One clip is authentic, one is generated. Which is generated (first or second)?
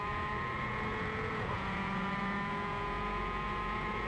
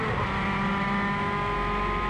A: first